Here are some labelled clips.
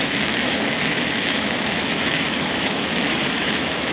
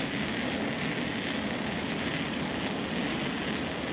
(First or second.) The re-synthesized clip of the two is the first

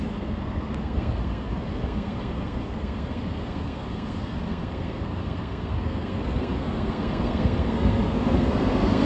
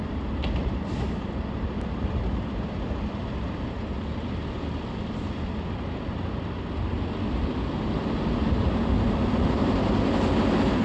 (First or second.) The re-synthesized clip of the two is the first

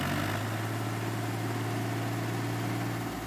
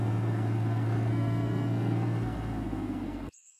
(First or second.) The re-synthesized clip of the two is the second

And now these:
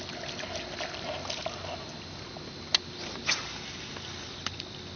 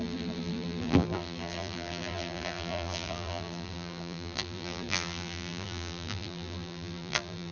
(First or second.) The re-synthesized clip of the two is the second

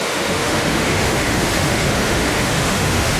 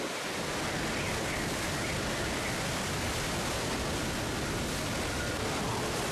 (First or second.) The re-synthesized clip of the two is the first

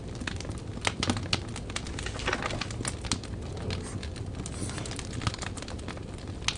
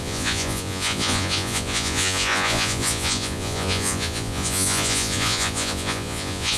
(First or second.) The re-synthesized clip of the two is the second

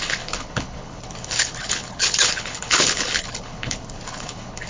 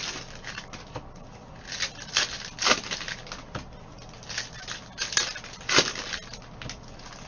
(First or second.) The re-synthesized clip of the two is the first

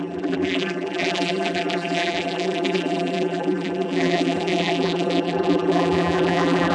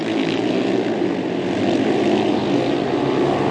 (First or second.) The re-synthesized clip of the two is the first